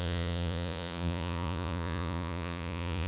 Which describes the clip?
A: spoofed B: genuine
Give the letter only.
A